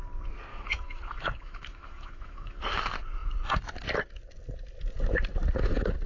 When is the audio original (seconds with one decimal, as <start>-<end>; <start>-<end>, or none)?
0.0-0.5; 2.6-6.1